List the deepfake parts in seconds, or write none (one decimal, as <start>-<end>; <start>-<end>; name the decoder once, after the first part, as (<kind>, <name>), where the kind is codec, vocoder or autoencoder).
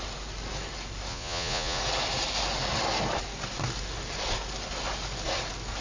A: 1.1-1.8 (vocoder, Vocos)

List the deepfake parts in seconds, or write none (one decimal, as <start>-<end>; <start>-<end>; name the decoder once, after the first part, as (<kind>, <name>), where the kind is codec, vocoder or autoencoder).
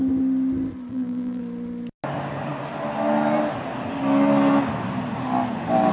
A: 0.9-1.4 (vocoder, BigVGAN v2)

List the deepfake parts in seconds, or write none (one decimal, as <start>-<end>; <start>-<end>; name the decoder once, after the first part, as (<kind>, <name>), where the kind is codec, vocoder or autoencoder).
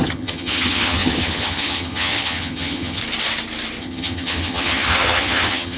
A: 0.0-3.0 (vocoder, HiFi-GAN); 3.8-5.8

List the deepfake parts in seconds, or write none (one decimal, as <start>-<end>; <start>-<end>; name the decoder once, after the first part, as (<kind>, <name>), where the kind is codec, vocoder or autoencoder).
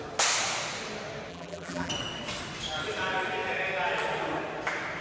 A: 1.3-1.9 (vocoder, BigVGAN v2)